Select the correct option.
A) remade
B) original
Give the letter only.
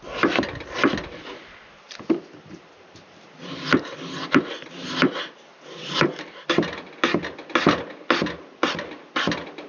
B